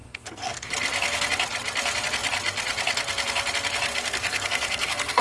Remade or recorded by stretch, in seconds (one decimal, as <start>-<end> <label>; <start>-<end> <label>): 0.0-0.7 remade; 0.7-3.9 recorded; 3.9-5.2 remade